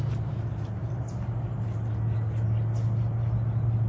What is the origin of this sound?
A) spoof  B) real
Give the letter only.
B